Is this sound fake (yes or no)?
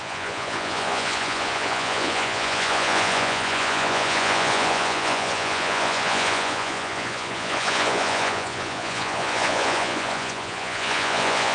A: yes